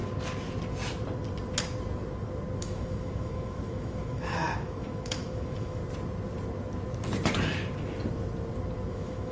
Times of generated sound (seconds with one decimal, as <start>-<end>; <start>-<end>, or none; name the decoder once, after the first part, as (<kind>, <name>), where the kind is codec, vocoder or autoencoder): 2.6-5.8 (autoencoder, DAC-VAE); 8.9-9.3